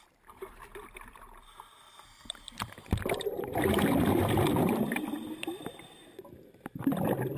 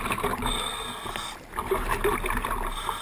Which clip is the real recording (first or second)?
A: second